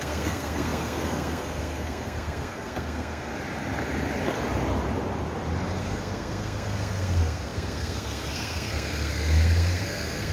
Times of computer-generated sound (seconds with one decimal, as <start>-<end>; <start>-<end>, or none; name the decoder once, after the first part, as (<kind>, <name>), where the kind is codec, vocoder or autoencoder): 0.0-3.3 (codec, SNAC); 5.8-10.3